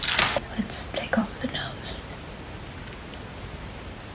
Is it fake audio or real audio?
fake